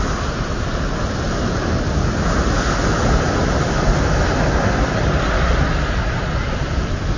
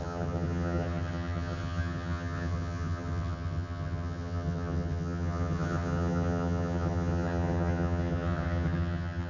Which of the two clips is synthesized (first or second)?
second